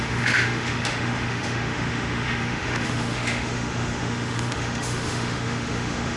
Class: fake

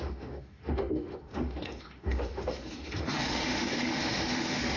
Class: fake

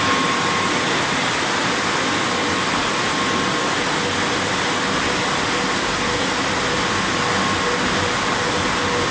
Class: real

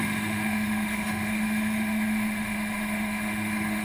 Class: fake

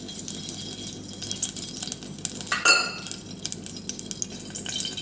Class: real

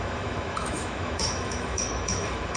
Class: fake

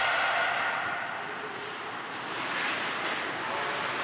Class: real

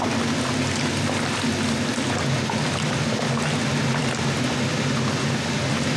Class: real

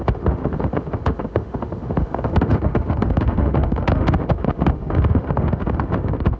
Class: fake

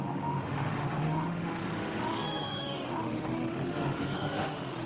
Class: fake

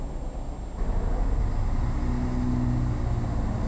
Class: real